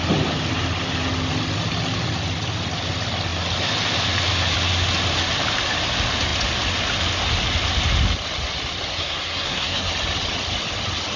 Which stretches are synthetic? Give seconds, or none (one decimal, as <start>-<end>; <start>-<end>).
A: 8.9-9.9